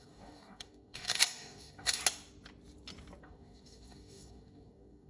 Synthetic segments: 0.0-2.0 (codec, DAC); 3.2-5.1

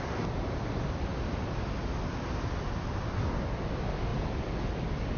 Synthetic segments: none

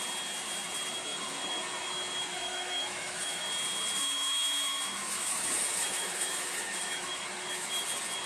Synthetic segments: 2.4-3.4 (autoencoder, DAC-VAE); 4.0-7.7